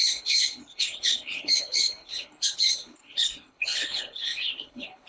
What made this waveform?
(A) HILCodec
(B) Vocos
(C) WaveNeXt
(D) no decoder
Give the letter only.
A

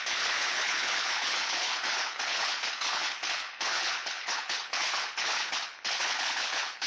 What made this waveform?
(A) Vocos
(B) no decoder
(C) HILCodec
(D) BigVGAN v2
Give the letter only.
C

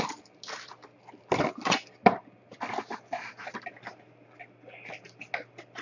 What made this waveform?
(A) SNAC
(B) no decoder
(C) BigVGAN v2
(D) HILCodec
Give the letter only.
B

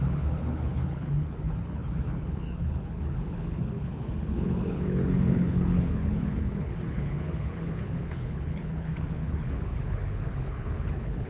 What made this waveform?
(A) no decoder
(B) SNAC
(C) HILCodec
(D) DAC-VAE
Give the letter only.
C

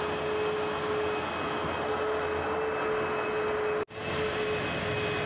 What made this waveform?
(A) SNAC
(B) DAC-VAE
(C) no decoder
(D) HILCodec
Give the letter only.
C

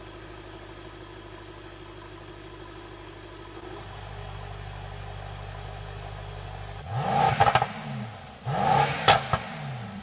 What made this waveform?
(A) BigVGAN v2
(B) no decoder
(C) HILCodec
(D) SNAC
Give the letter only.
B